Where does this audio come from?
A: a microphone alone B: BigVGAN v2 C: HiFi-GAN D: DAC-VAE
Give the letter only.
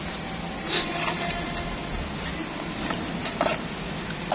A